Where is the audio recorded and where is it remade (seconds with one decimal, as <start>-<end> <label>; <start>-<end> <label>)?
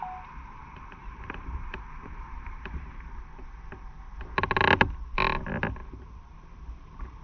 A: 0.0-0.6 recorded; 0.6-3.4 remade; 3.4-7.2 recorded